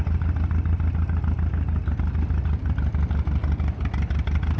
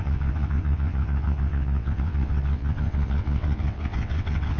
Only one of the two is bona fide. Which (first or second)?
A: first